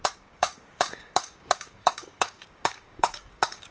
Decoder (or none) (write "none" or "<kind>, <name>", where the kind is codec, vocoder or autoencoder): codec, DAC